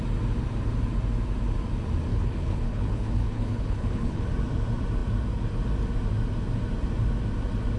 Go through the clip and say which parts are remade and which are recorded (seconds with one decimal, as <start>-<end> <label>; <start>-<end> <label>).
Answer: 0.0-2.1 recorded; 2.1-4.2 remade; 4.2-7.8 recorded